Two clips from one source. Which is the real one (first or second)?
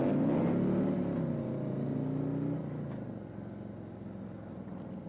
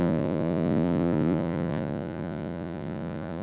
first